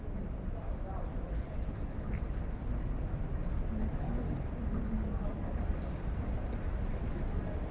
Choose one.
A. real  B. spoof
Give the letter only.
A